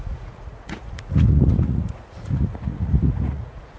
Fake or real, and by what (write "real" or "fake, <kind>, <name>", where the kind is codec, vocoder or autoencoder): fake, vocoder, Vocos